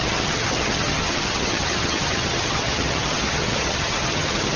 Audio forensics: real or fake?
fake